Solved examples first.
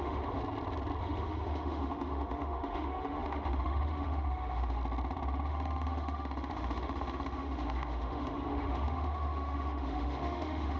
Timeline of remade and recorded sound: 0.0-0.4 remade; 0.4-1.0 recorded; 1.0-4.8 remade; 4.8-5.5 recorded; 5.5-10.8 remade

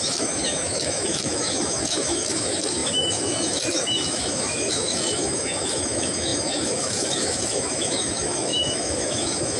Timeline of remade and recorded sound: 0.0-9.6 remade